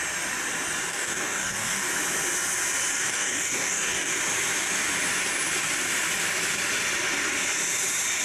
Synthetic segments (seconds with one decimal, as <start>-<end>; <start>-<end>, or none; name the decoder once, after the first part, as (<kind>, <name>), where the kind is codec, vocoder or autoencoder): 0.9-1.9 (codec, DAC); 2.9-4.2